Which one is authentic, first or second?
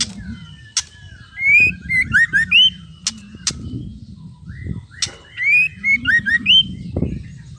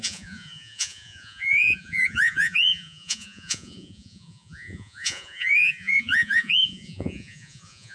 first